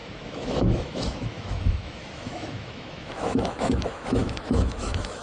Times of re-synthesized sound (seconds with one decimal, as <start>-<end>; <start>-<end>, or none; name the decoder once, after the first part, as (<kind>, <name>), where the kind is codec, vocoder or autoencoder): 0.0-5.2 (autoencoder, DAC-VAE)